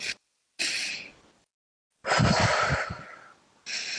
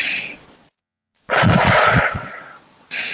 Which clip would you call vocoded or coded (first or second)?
second